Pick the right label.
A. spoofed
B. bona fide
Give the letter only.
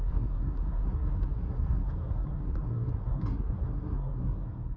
A